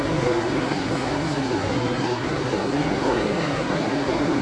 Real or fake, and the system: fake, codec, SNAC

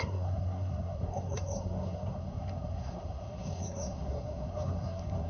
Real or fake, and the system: fake, codec, SNAC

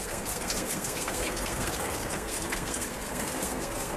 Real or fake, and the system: fake, codec, SNAC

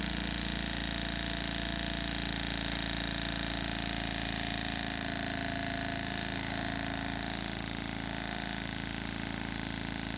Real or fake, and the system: real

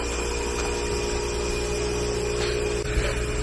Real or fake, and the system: real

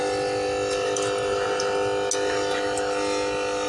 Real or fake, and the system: real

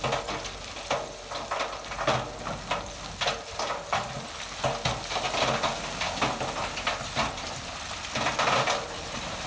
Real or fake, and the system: real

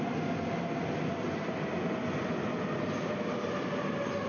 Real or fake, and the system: real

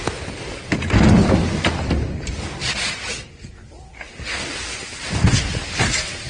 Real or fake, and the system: real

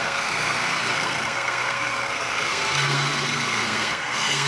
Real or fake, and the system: fake, codec, SNAC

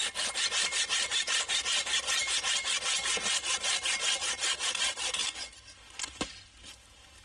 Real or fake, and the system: real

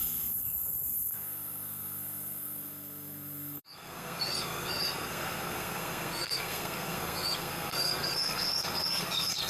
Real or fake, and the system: fake, codec, SNAC